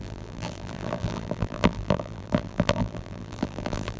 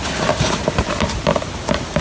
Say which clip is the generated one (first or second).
first